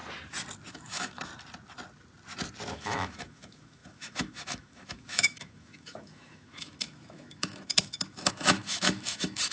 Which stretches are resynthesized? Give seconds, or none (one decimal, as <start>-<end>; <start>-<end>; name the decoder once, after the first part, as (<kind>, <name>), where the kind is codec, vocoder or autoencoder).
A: 0.7-1.3 (autoencoder, DAC-VAE); 2.7-9.5